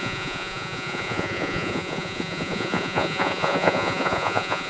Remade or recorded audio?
remade